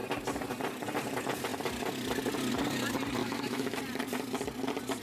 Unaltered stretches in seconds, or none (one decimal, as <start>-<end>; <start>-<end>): 0.0-3.2; 3.8-5.0